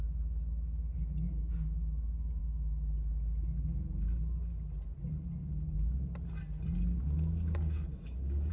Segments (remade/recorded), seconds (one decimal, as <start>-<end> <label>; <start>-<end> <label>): 0.0-7.0 recorded; 7.0-8.5 remade